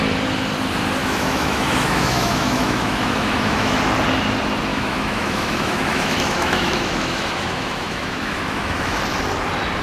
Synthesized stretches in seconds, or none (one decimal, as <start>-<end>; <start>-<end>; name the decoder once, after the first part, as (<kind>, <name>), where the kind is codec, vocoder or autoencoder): 1.0-3.8 (autoencoder, DAC-VAE); 4.7-9.0